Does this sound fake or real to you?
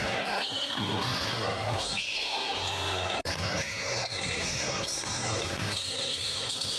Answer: fake